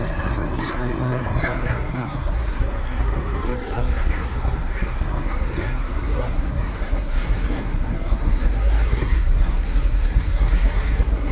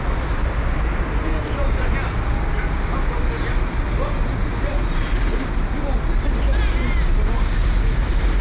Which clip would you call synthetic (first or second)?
first